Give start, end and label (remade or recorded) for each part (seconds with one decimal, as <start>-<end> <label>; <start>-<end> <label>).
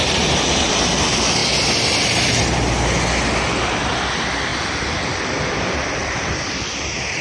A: 0.0-1.4 recorded; 1.4-2.3 remade; 2.3-4.5 recorded; 4.5-7.2 remade